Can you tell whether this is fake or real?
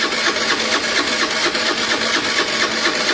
real